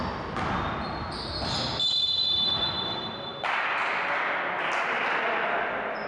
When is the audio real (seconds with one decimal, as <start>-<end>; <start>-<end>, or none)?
0.0-6.1